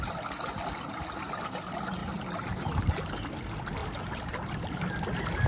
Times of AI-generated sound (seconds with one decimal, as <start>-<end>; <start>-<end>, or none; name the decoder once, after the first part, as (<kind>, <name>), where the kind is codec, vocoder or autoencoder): 2.0-2.9 (vocoder, BigVGAN v2); 3.8-5.0